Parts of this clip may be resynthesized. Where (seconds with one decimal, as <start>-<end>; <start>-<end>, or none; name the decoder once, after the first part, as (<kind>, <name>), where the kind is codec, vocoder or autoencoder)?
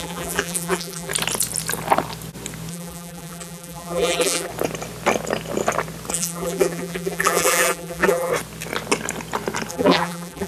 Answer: 0.0-1.1 (vocoder, BigVGAN v2); 2.7-4.5; 6.1-8.3; 9.7-10.5